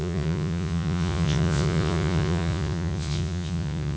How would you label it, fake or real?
fake